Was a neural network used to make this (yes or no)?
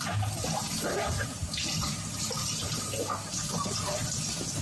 no